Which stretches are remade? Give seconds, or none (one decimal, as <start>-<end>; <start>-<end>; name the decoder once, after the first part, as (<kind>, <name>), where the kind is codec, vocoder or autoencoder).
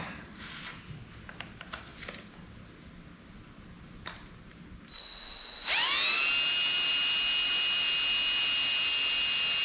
none